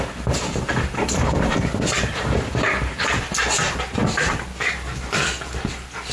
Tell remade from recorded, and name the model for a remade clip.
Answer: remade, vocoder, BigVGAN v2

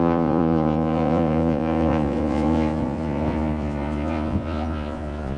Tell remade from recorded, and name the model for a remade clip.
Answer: remade, vocoder, Vocos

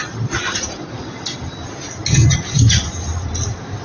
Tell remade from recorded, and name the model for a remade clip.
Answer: recorded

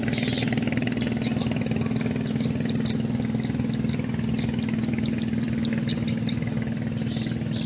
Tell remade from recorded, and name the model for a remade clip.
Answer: recorded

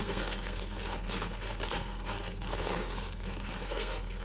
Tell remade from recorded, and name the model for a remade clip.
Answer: remade, codec, SNAC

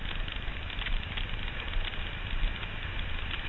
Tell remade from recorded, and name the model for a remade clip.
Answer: recorded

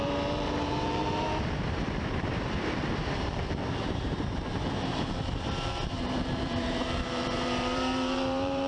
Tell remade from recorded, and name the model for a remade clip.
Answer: remade, vocoder, BigVGAN v2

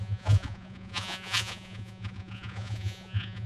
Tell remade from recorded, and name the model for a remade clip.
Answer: remade, vocoder, Vocos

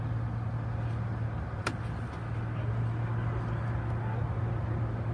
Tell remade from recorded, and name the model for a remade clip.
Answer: recorded